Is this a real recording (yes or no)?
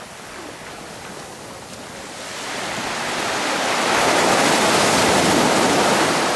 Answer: yes